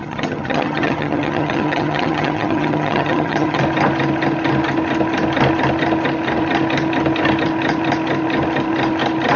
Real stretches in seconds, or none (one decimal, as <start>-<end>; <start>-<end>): 3.6-9.4